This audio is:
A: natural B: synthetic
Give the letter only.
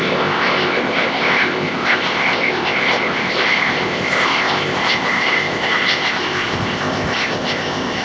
B